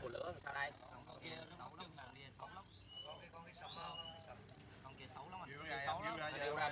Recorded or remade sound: remade